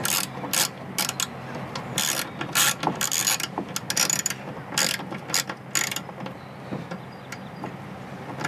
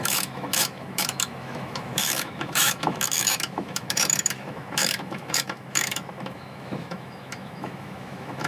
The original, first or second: first